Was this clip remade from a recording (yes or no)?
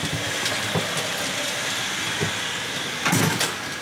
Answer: no